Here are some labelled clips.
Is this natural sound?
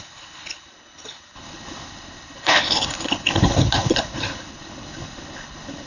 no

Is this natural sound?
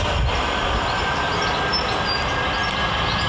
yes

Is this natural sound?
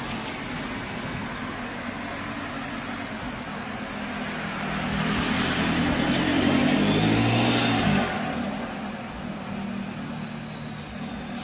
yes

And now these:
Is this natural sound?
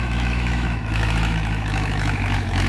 no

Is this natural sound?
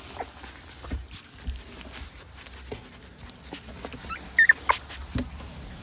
yes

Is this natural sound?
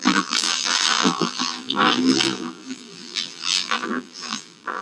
no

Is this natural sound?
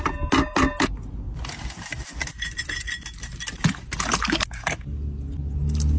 yes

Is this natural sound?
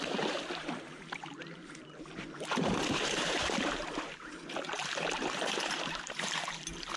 no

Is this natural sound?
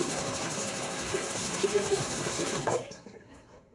no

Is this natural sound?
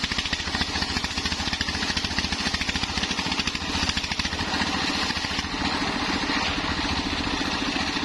yes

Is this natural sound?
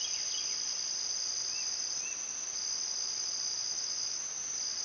yes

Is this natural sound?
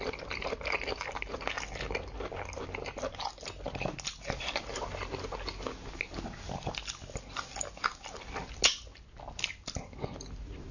yes